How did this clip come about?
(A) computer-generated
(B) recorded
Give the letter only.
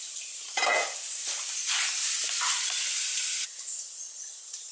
A